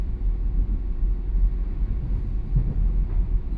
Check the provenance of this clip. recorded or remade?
recorded